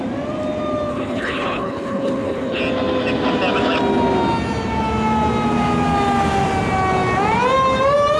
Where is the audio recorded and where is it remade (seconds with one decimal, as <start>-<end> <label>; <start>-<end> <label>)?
0.0-0.9 recorded; 0.9-2.6 remade; 2.6-8.2 recorded